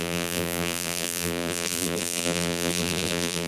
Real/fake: fake